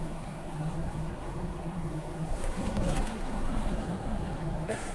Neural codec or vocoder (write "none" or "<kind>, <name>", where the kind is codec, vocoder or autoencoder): codec, SNAC